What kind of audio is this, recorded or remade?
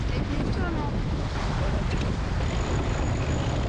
recorded